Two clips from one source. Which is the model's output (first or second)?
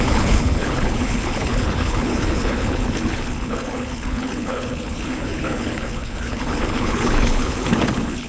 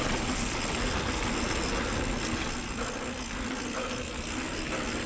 first